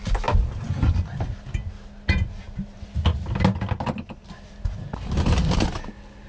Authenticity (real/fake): real